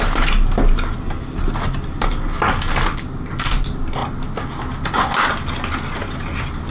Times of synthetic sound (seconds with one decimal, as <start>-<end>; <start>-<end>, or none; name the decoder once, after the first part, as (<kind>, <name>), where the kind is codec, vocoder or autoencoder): none